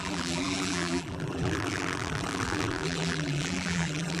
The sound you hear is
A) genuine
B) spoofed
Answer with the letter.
B